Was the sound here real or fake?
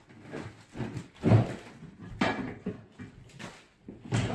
real